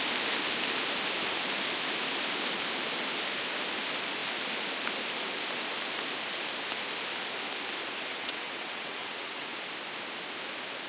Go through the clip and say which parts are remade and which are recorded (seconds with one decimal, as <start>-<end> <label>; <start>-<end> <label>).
0.0-8.1 recorded; 8.1-9.6 remade; 9.6-10.9 recorded